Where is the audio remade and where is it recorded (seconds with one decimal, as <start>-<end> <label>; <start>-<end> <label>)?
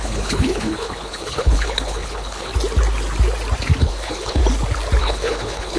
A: 0.0-2.5 remade; 2.5-3.8 recorded; 3.8-4.4 remade; 4.4-5.0 recorded; 5.0-5.8 remade